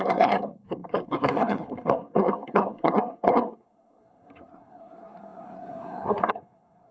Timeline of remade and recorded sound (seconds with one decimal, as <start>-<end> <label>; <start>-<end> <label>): 0.0-6.9 remade